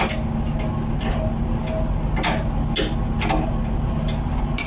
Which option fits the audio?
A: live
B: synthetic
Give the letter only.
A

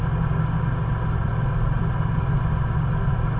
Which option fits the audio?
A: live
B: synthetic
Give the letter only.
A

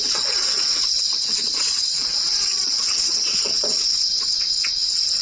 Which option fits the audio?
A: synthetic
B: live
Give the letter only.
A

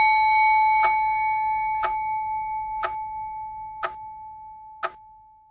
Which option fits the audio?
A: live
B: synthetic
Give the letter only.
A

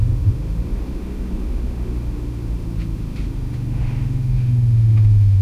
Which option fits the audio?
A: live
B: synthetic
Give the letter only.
B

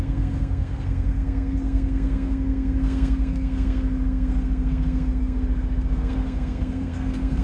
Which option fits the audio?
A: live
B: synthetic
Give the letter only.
B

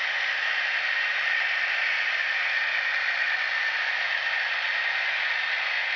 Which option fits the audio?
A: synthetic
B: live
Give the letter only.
B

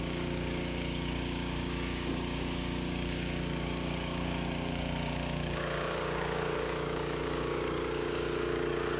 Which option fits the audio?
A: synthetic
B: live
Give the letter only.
A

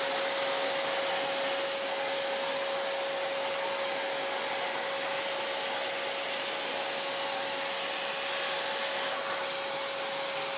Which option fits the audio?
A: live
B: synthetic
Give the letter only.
A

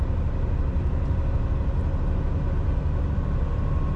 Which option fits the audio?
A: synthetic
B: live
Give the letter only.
B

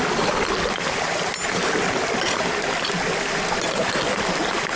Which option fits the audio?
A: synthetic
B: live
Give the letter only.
B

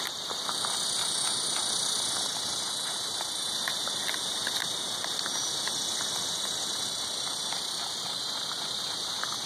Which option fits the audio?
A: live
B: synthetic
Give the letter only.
A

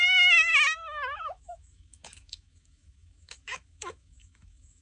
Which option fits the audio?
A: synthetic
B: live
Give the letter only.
A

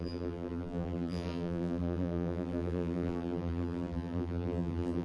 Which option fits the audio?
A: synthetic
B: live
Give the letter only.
A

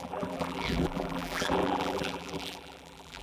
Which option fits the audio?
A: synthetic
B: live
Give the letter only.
A